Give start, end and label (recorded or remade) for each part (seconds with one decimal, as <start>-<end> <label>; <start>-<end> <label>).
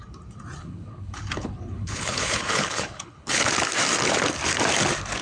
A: 0.0-0.6 recorded; 0.6-3.5 remade; 3.5-5.2 recorded